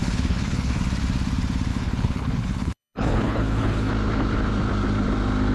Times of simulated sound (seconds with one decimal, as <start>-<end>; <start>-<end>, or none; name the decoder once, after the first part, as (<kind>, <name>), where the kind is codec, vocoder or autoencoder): 0.0-0.8 (codec, HILCodec); 1.7-3.9